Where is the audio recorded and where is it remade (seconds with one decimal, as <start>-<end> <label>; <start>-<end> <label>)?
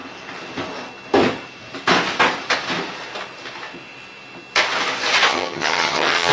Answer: 0.0-5.3 recorded; 5.3-6.3 remade